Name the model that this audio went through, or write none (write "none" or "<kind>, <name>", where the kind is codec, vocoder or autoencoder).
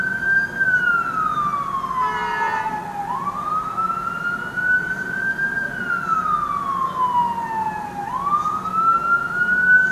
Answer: none